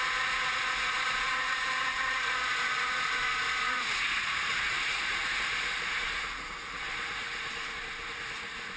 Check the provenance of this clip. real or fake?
fake